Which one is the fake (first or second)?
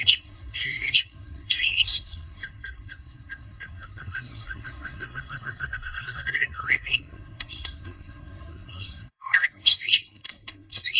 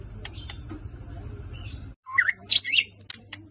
first